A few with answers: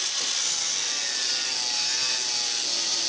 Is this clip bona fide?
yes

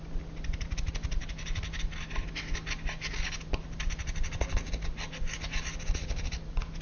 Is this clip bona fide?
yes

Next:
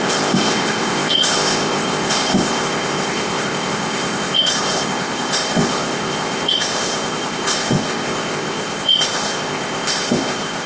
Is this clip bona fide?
no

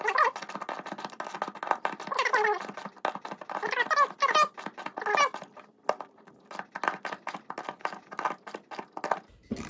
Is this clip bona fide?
yes